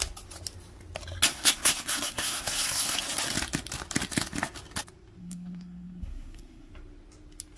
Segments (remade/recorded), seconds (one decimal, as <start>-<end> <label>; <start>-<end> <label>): 0.0-1.3 recorded; 1.3-3.0 remade; 3.0-5.2 recorded; 5.2-6.7 remade; 6.7-7.6 recorded